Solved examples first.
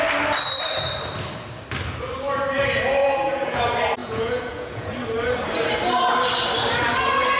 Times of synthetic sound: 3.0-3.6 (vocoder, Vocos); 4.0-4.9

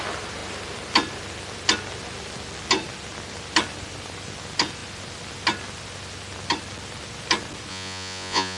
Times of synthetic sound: 7.7-8.6 (vocoder, Vocos)

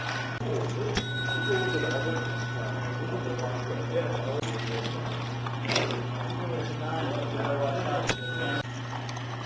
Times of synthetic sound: none